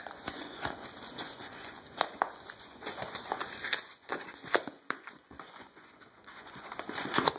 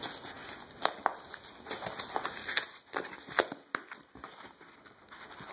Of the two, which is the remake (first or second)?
first